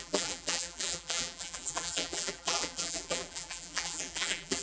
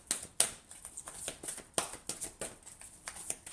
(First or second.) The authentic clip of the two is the second